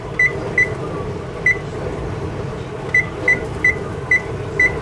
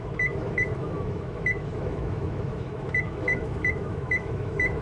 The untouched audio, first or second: first